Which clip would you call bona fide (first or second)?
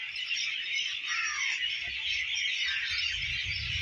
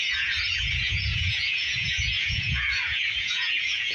first